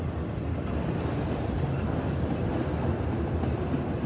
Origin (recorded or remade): recorded